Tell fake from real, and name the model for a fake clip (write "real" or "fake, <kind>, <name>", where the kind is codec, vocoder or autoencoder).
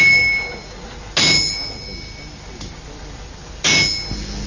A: real